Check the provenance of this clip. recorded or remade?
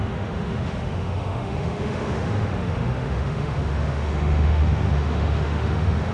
remade